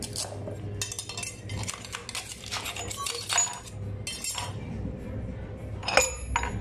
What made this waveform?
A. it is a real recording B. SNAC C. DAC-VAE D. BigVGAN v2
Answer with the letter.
A